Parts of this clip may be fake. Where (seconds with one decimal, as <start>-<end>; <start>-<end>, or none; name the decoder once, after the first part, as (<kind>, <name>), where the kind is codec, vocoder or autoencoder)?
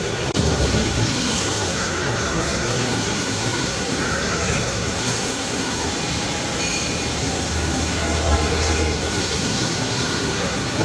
0.0-5.9 (codec, SNAC); 7.2-10.8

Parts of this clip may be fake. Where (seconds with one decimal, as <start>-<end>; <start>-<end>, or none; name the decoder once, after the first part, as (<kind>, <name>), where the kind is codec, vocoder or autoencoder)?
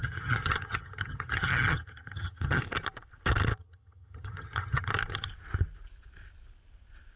0.0-2.6 (vocoder, HiFi-GAN); 3.6-4.9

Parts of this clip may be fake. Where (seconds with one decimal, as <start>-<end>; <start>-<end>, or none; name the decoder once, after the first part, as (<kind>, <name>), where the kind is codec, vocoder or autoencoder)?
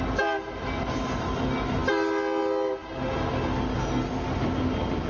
none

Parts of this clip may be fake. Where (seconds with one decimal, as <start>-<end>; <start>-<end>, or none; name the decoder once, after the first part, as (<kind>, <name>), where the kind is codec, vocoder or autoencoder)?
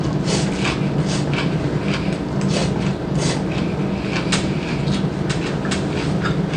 none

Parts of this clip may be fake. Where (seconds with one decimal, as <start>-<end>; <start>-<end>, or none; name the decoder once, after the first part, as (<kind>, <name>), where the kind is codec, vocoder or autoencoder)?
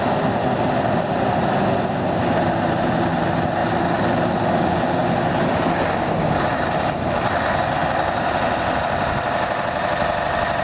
none